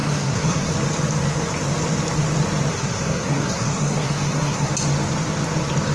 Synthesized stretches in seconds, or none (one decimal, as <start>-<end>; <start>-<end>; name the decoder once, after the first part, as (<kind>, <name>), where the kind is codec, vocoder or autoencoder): 0.0-0.7 (codec, SNAC); 2.7-4.7